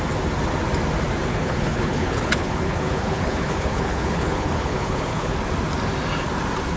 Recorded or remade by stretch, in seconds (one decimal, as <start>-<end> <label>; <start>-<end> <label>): 0.0-1.3 recorded; 1.3-5.4 remade; 5.4-6.8 recorded